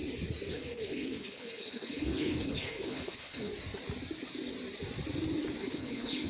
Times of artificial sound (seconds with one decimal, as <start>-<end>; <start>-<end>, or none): 0.5-3.5; 5.6-6.3